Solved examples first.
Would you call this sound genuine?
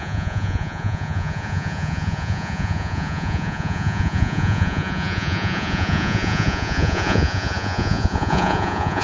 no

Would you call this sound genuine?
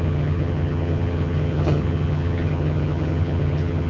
no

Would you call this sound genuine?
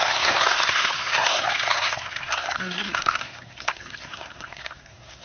no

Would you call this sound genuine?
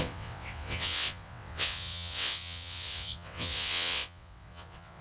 no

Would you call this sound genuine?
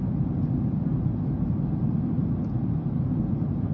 yes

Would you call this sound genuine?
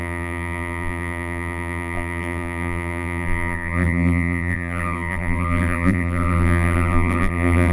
no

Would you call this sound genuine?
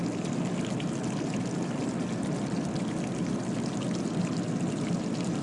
yes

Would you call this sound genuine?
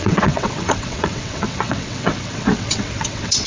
no